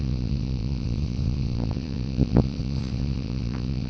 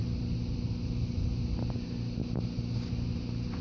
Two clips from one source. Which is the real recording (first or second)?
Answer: second